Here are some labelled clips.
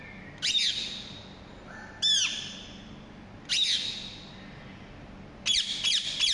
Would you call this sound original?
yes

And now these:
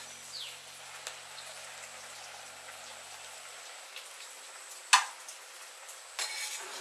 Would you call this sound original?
yes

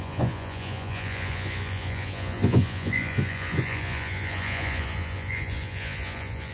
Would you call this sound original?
no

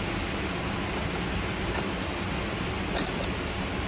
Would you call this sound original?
yes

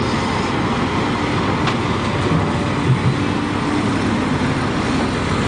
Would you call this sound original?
yes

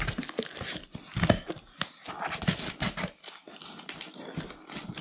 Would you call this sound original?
yes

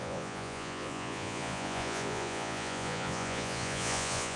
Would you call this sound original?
no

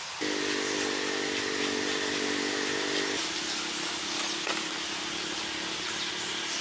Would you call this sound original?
yes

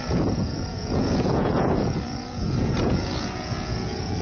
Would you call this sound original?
no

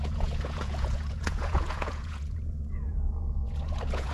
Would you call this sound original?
no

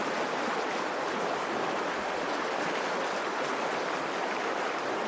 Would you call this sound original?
yes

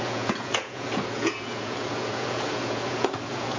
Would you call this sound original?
no